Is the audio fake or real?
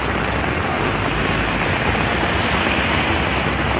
real